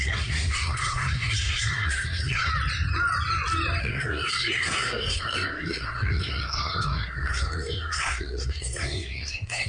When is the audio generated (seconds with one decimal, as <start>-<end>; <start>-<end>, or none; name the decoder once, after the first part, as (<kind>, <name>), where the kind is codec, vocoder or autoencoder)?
0.0-2.5 (codec, SNAC); 3.8-9.7